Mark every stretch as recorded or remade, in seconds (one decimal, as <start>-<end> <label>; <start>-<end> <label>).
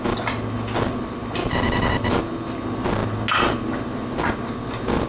0.0-5.1 recorded